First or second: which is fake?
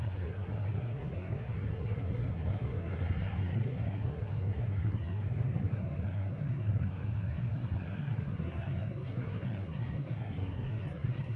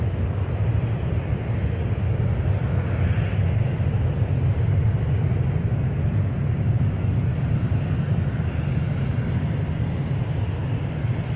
first